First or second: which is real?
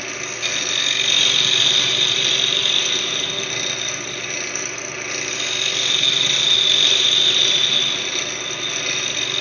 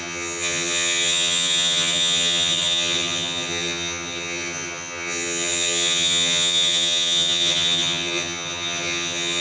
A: first